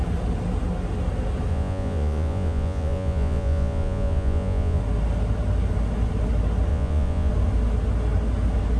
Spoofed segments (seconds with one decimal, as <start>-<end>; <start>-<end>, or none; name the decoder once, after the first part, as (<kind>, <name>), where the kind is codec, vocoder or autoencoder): 1.5-4.8 (vocoder, Vocos); 6.7-7.3